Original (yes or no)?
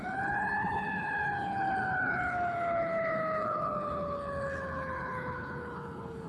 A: no